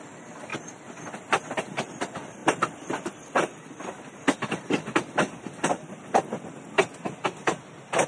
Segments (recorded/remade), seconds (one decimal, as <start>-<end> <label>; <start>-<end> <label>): 0.0-8.1 recorded